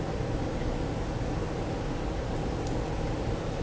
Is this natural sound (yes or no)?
yes